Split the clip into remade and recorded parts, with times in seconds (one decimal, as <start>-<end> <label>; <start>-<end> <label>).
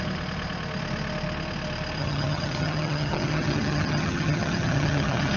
0.0-2.0 recorded; 2.0-5.4 remade